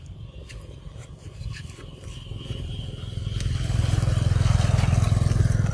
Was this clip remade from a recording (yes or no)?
no